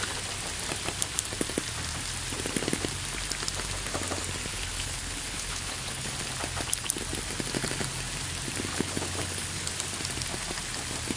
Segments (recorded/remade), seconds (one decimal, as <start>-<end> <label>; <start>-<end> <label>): 0.0-4.5 recorded; 4.5-6.1 remade; 6.1-8.7 recorded; 8.7-9.7 remade; 9.7-11.2 recorded

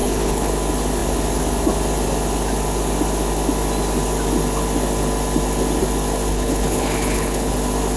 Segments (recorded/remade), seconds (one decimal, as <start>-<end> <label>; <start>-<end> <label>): 0.0-0.5 remade; 0.5-6.3 recorded; 6.3-7.5 remade; 7.5-8.0 recorded

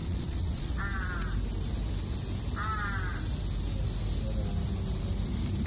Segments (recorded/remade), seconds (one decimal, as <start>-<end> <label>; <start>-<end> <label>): 0.0-0.8 remade; 0.8-5.7 recorded

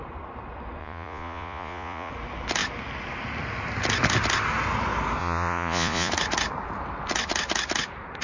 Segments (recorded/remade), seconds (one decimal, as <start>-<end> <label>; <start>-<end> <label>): 0.0-0.8 recorded; 0.8-2.1 remade; 2.1-5.2 recorded; 5.2-6.1 remade; 6.1-8.2 recorded

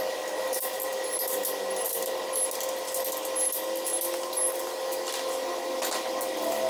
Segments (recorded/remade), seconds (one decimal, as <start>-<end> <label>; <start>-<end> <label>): 0.0-6.7 recorded

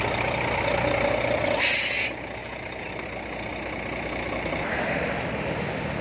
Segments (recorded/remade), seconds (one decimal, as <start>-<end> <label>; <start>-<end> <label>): 0.0-6.0 recorded

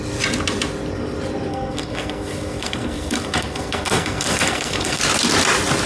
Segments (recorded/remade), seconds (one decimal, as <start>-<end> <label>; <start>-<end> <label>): 0.0-1.5 recorded; 1.5-5.0 remade; 5.0-5.9 recorded